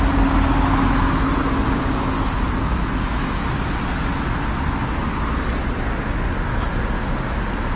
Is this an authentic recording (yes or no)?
yes